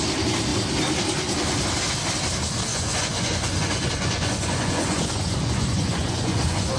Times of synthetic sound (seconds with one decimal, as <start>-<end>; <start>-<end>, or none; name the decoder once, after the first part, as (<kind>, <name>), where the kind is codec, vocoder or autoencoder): 2.7-6.8 (vocoder, Vocos)